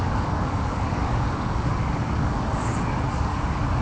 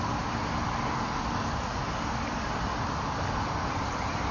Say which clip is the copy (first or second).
first